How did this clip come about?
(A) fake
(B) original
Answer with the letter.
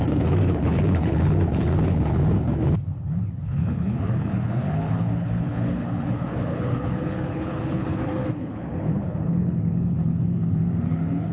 A